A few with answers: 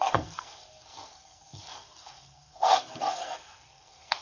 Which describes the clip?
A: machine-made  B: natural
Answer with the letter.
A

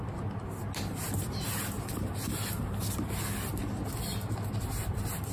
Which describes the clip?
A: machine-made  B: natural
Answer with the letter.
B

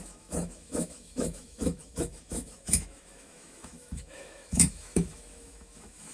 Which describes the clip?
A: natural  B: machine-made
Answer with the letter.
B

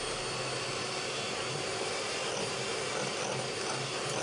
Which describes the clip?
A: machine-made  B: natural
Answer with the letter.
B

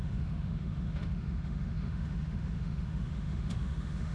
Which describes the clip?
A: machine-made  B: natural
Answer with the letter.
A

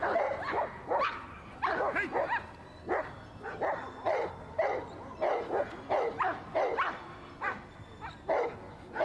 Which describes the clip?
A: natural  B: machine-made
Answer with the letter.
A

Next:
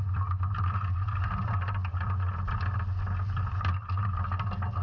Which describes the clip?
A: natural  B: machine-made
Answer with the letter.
A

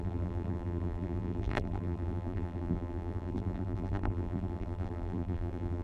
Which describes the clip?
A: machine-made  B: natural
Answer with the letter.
A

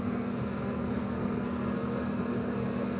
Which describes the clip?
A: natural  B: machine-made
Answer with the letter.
B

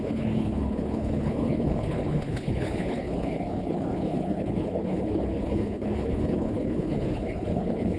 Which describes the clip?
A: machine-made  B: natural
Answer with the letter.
A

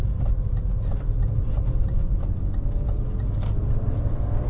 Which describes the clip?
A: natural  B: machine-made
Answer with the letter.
A